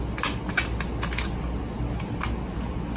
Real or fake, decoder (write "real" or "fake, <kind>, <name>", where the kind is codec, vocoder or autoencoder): real